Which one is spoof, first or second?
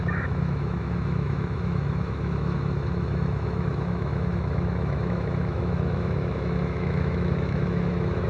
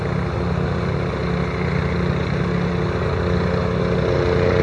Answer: first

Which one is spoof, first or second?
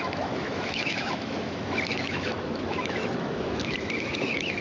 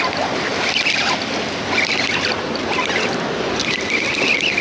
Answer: first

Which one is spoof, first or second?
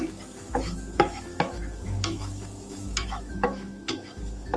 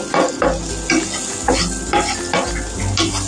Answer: first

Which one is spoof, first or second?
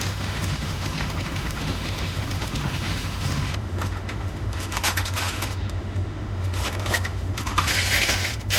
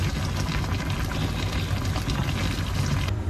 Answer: first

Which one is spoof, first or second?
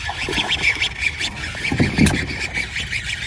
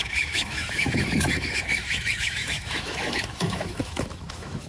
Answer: second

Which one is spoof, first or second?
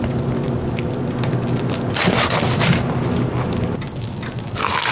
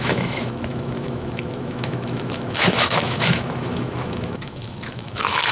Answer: second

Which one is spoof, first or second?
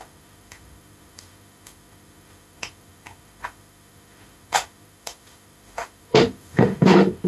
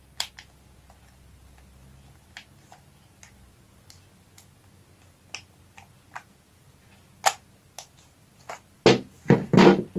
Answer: first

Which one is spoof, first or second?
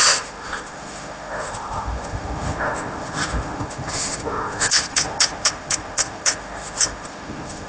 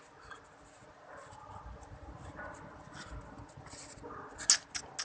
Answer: first